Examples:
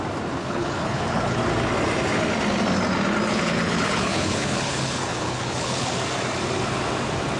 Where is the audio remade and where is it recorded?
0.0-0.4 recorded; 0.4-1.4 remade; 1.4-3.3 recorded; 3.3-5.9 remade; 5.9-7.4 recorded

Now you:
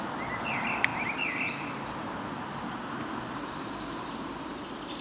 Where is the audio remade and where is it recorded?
0.0-5.0 recorded

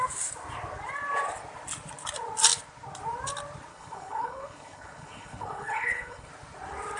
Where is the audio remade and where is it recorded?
0.0-3.7 recorded; 3.7-6.3 remade; 6.3-7.0 recorded

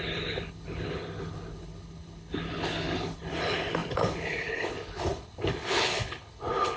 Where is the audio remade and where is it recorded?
0.0-6.8 remade

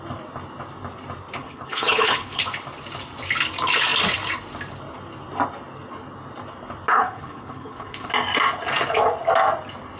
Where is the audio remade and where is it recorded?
0.0-1.4 recorded; 1.4-2.4 remade; 2.4-6.9 recorded; 6.9-8.1 remade; 8.1-10.0 recorded

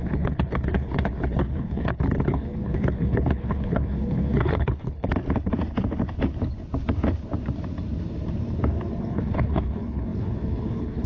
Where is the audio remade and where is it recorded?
0.0-5.1 remade; 5.1-9.0 recorded; 9.0-11.1 remade

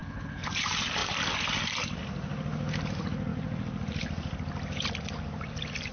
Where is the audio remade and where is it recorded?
0.0-0.5 remade; 0.5-5.9 recorded